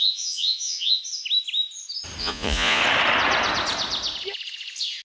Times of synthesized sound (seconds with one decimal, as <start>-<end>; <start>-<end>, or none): 0.0-1.0; 2.2-2.8